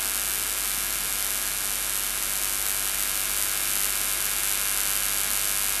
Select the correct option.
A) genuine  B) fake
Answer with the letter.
A